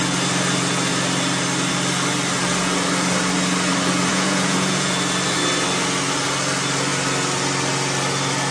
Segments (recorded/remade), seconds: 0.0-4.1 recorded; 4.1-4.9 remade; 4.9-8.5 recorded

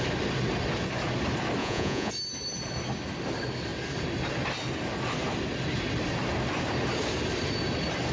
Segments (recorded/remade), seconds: 0.0-1.6 recorded; 1.6-2.1 remade; 2.1-8.1 recorded

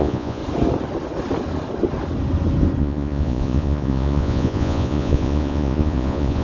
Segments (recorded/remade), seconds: 0.0-0.4 remade; 0.4-2.8 recorded; 2.8-6.4 remade

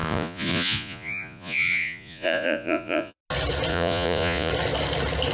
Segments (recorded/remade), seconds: 0.0-3.2 remade; 3.2-3.7 recorded; 3.7-4.5 remade; 4.5-5.3 recorded

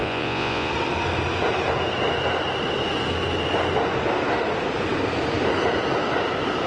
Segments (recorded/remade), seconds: 0.0-0.7 remade; 0.7-6.7 recorded

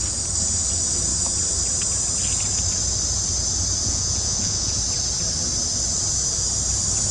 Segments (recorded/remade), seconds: 0.0-3.8 recorded; 3.8-4.8 remade; 4.8-7.1 recorded